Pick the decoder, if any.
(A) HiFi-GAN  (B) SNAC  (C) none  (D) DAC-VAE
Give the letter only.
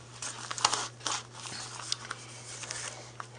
C